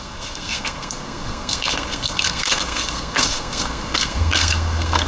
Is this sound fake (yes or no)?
yes